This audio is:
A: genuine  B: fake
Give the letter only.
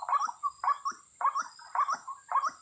A